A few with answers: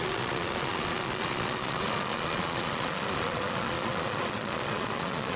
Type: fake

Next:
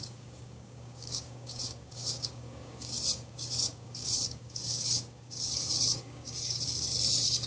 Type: fake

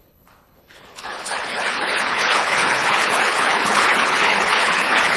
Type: fake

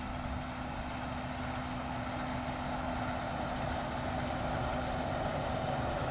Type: real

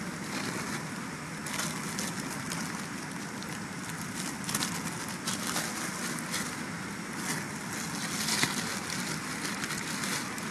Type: real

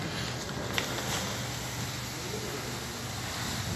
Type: real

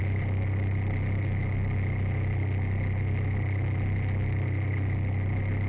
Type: real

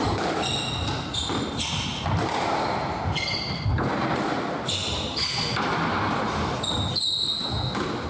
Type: real